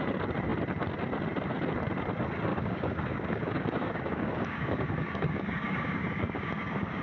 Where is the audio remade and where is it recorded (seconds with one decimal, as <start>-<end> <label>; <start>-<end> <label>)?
0.0-2.5 recorded; 2.5-7.0 remade